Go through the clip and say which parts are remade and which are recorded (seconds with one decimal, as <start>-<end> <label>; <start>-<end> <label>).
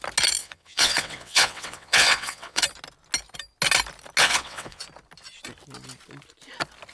0.0-0.4 recorded; 0.4-2.6 remade; 2.6-4.2 recorded; 4.2-4.8 remade; 4.8-6.9 recorded